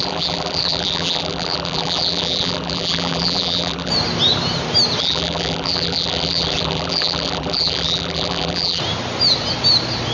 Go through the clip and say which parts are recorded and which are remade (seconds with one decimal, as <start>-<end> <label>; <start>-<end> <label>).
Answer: 0.0-3.9 remade; 3.9-5.0 recorded; 5.0-8.8 remade; 8.8-10.1 recorded